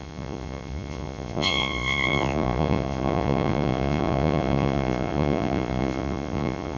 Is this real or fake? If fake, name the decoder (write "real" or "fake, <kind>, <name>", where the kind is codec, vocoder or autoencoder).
fake, vocoder, Vocos